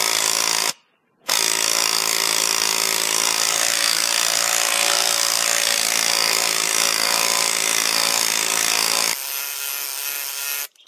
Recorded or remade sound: recorded